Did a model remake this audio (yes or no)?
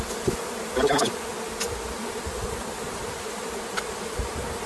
no